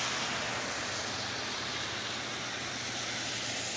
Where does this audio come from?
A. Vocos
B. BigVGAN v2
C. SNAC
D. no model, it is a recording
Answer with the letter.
D